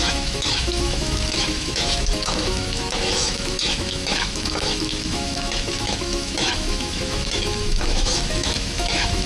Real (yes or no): no